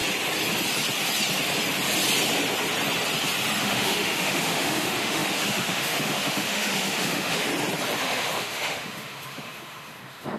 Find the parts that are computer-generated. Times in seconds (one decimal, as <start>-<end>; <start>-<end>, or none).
3.6-7.5; 8.0-10.4